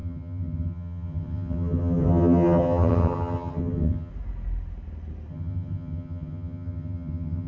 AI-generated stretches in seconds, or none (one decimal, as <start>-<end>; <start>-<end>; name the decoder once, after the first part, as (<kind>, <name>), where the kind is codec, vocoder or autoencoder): 0.0-4.1 (vocoder, HiFi-GAN); 5.3-7.5